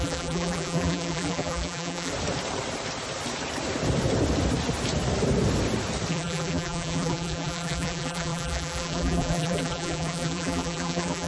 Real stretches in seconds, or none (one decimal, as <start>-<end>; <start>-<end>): 2.1-6.1